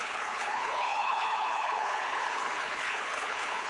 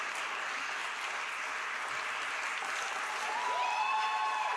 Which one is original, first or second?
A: second